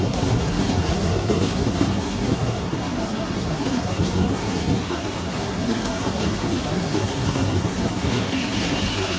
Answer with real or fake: fake